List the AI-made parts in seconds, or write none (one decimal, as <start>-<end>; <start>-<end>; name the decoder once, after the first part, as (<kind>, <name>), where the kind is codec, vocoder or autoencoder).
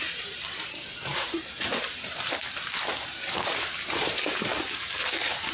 0.0-5.5 (vocoder, BigVGAN v2)